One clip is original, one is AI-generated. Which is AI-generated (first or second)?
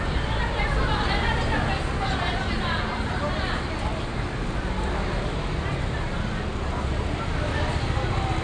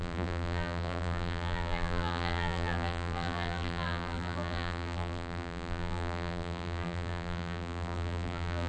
second